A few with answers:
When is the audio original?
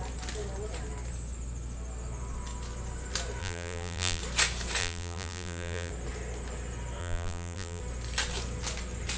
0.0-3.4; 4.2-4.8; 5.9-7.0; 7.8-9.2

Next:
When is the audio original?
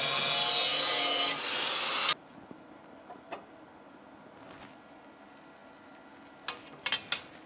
0.0-7.5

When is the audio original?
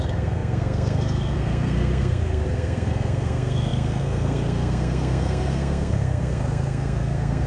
none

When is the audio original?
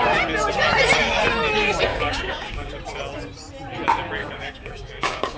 0.0-1.9; 2.7-4.2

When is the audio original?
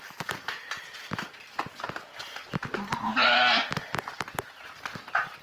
0.0-5.4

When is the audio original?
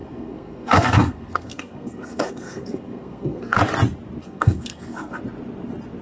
3.6-4.2; 5.2-6.0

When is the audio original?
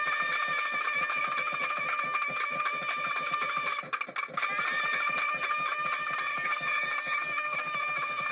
0.0-6.3